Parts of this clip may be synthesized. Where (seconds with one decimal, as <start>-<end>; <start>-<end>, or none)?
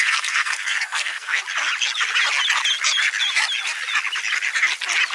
0.0-1.4